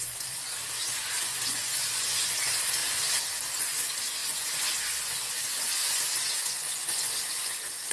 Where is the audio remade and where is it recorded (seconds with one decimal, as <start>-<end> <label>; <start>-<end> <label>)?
0.0-2.8 remade; 2.8-3.6 recorded; 3.6-7.9 remade